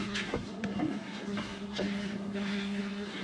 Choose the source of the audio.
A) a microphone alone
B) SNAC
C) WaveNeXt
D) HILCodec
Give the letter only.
B